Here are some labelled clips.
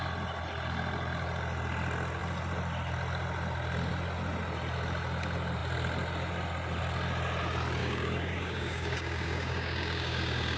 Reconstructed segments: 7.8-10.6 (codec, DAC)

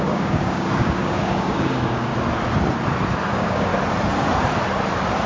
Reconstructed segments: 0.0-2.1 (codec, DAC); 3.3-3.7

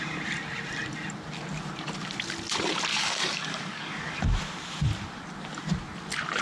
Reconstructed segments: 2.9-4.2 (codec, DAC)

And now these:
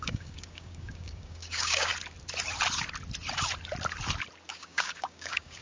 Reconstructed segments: 0.0-1.9 (codec, DAC); 4.5-5.6

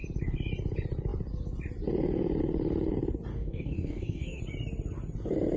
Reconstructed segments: 3.3-4.4 (codec, DAC)

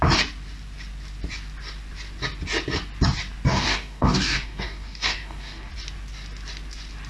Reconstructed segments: 3.5-5.7 (codec, DAC)

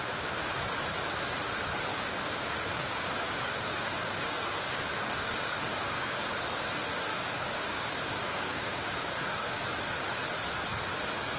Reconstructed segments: 1.9-6.2 (codec, DAC); 7.1-9.6